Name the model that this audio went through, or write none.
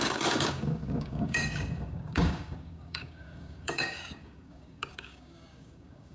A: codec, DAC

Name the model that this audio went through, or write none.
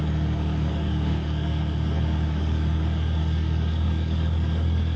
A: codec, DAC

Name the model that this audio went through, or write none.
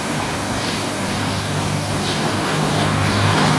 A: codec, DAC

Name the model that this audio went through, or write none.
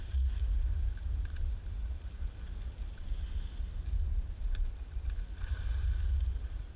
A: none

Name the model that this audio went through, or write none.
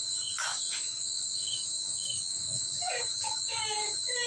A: codec, DAC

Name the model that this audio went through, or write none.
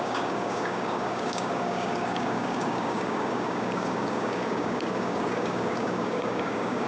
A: codec, DAC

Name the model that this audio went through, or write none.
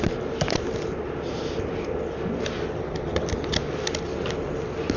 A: none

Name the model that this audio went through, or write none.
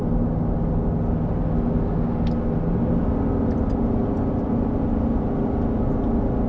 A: none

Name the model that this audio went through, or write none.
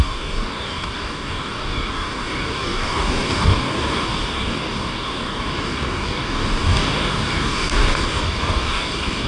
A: codec, DAC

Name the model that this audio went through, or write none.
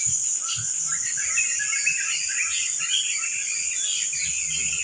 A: none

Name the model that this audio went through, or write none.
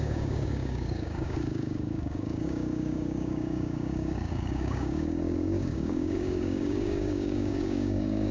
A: codec, DAC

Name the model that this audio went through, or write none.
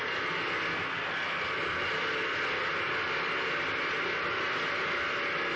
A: none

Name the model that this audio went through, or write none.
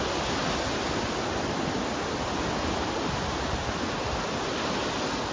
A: none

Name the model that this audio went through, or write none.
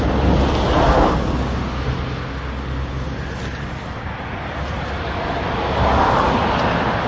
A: none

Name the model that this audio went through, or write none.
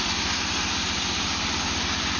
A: none